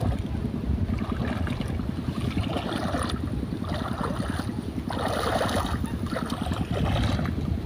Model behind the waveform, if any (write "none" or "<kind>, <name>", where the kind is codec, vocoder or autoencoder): none